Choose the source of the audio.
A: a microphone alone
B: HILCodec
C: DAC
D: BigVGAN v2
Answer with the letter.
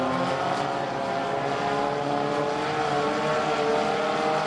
A